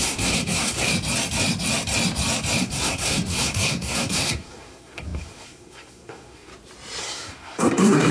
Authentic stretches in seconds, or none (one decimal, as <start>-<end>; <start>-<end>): 0.9-2.6; 6.5-7.0